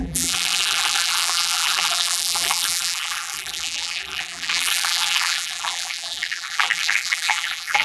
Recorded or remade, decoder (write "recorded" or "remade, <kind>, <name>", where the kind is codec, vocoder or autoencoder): remade, vocoder, BigVGAN v2